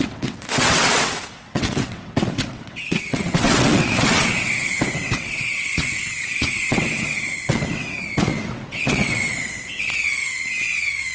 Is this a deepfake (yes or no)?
yes